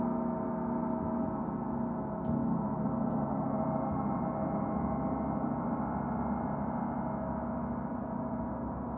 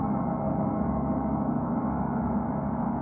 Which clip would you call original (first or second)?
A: first